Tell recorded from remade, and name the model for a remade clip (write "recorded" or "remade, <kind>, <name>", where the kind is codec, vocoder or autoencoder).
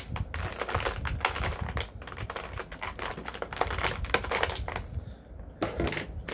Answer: recorded